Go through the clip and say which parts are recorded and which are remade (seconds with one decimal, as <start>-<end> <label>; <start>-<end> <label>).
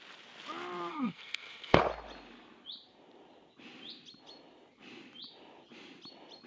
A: 0.0-0.9 recorded; 0.9-1.8 remade; 1.8-6.5 recorded